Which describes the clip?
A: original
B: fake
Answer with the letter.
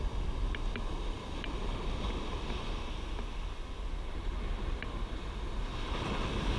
A